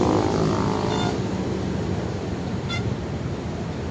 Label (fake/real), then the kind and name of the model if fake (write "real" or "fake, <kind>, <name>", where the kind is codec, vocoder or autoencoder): real